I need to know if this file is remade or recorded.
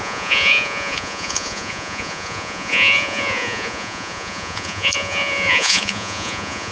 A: remade